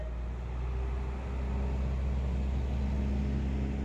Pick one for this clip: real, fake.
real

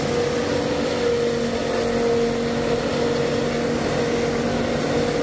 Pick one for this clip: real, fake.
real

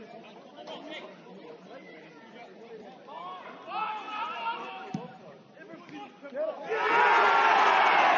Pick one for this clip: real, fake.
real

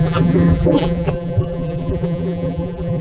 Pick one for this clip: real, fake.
fake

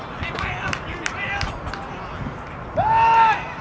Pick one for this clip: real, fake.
real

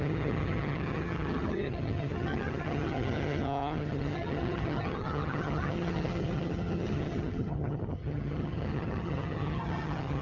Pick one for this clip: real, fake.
fake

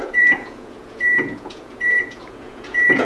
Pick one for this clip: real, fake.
fake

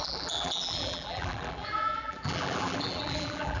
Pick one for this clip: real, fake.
fake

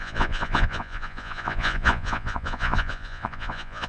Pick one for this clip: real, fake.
fake